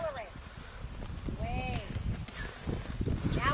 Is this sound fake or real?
real